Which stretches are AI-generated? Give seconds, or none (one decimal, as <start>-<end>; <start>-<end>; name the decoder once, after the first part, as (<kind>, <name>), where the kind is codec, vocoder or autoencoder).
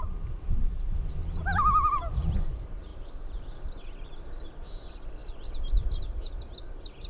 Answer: 0.0-1.2 (vocoder, BigVGAN v2); 1.9-7.1